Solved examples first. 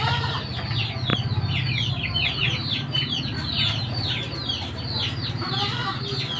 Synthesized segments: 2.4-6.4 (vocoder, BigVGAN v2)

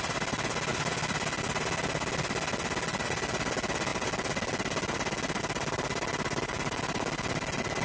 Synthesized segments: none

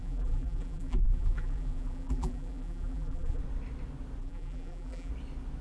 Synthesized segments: 0.0-3.4 (vocoder, BigVGAN v2); 4.2-5.1

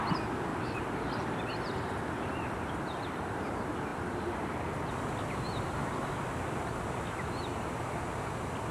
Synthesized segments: 0.5-3.4 (vocoder, BigVGAN v2)

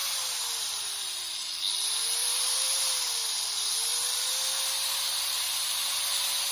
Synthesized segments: 0.0-1.1 (vocoder, BigVGAN v2); 2.2-2.8; 3.9-4.9

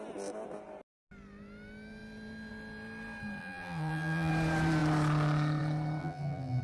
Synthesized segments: 3.4-4.3 (vocoder, BigVGAN v2); 6.0-6.6

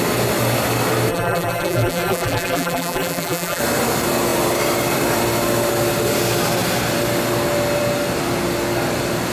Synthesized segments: 1.1-3.6 (vocoder, BigVGAN v2)

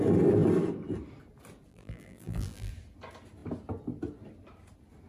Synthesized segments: 1.7-2.7 (vocoder, BigVGAN v2)